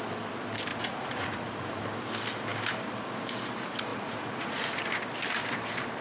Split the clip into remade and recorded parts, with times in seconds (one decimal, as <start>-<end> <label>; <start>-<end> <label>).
0.0-0.7 recorded; 0.7-1.8 remade; 1.8-3.9 recorded; 3.9-4.6 remade; 4.6-6.0 recorded